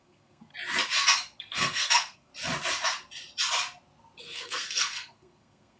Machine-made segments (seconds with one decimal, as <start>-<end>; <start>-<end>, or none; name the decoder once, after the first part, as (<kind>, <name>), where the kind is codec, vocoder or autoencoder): 0.0-0.5 (codec, SNAC); 1.4-2.3; 4.2-5.8